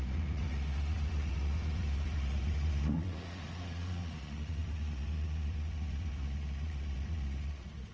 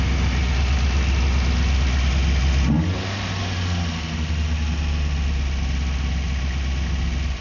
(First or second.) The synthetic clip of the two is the first